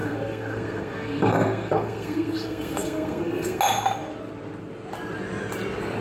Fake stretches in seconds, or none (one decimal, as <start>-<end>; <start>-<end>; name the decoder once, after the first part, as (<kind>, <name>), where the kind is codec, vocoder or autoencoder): 0.0-3.6 (codec, SNAC)